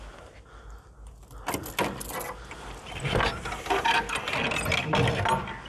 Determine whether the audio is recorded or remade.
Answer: recorded